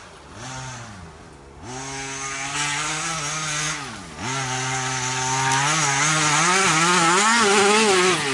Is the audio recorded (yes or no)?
yes